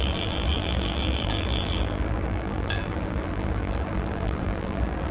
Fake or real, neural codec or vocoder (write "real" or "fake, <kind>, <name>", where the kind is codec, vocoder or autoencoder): fake, vocoder, BigVGAN v2